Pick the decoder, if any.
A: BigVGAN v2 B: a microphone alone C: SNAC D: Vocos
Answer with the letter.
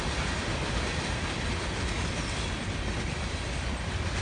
B